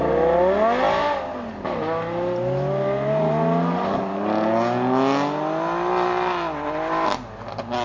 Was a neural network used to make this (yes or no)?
no